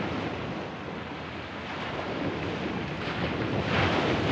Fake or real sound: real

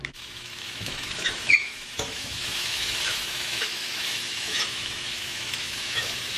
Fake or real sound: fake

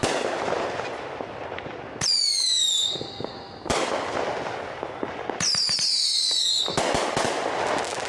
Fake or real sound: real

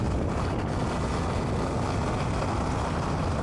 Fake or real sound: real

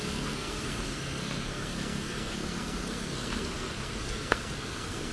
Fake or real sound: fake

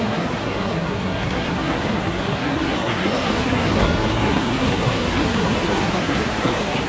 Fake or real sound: fake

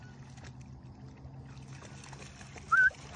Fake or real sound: real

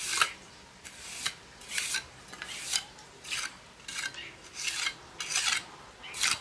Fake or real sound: real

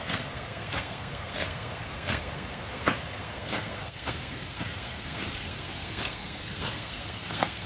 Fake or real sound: fake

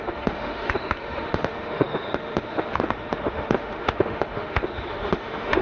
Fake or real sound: fake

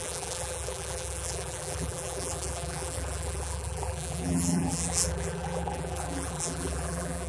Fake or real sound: fake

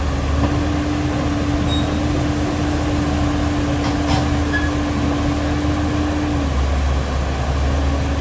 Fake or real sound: real